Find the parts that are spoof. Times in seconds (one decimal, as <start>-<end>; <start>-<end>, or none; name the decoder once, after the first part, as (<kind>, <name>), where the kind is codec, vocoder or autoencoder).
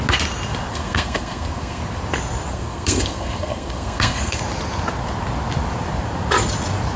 0.7-1.8 (codec, SNAC); 2.5-4.4